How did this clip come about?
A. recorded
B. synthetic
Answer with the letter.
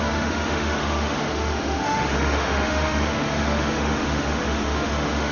B